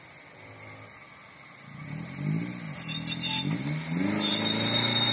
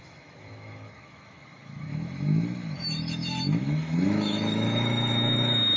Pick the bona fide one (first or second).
first